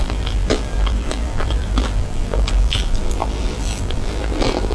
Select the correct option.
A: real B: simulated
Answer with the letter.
B